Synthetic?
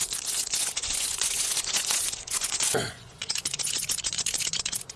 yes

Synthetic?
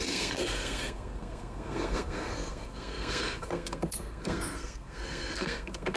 yes